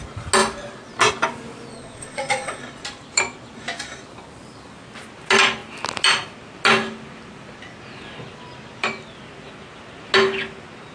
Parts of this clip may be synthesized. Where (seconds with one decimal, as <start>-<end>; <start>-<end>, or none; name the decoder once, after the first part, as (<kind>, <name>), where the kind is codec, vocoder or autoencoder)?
1.7-2.6 (vocoder, WaveNeXt)